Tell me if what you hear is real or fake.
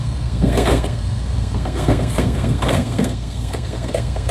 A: fake